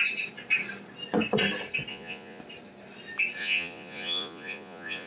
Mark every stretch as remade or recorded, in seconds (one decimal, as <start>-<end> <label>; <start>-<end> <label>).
0.0-1.9 recorded; 1.9-2.4 remade; 2.4-3.4 recorded; 3.4-5.1 remade